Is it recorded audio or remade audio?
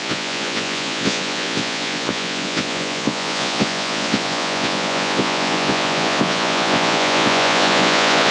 remade